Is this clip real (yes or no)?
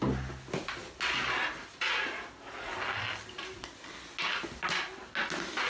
yes